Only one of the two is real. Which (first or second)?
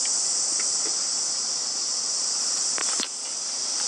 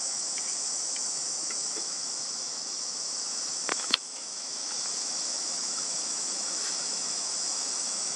first